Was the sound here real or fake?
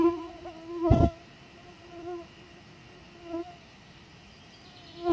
fake